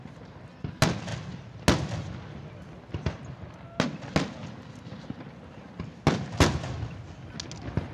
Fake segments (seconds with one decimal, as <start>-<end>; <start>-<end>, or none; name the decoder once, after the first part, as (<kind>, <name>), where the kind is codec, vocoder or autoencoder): none